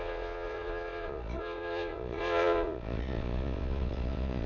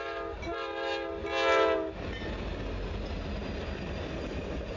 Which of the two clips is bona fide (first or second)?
second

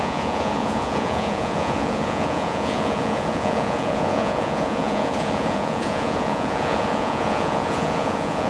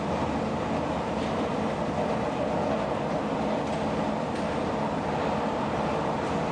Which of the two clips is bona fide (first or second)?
second